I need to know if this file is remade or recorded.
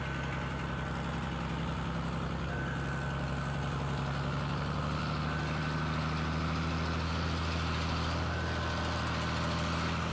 recorded